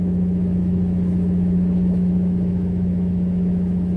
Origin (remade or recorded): remade